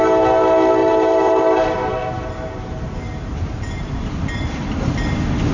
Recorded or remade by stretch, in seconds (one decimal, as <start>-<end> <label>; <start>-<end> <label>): 0.0-0.8 recorded; 0.8-4.1 remade; 4.1-5.5 recorded